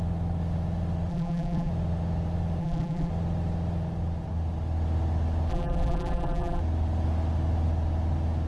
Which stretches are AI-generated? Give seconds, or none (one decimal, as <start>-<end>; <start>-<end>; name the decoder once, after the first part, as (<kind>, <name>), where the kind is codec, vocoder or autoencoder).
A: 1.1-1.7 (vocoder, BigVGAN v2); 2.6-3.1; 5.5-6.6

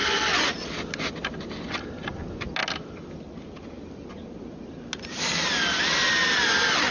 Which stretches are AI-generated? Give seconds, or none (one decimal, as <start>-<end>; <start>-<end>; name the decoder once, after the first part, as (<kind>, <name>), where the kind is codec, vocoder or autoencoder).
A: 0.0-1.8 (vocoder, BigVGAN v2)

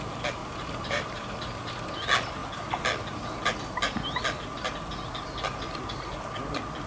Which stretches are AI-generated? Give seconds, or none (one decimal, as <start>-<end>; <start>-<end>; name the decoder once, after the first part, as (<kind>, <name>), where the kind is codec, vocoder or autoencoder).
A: 0.4-1.5 (vocoder, BigVGAN v2)

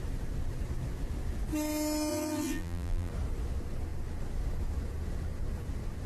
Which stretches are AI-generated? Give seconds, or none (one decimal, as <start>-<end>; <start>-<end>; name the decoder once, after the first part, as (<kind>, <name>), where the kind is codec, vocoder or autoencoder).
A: 2.1-3.1 (vocoder, BigVGAN v2)